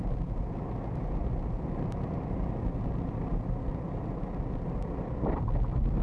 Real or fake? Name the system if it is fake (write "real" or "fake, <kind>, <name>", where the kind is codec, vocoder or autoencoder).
real